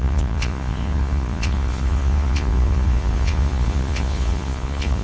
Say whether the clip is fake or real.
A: fake